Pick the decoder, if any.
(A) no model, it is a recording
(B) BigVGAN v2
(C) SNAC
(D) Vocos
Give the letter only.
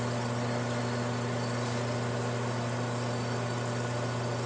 A